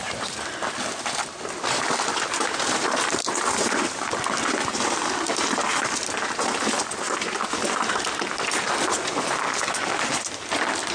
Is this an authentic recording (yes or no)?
yes